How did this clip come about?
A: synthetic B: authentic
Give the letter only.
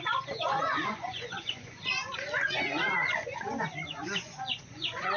A